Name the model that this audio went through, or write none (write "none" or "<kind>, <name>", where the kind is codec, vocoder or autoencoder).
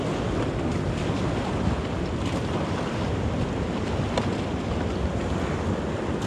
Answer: none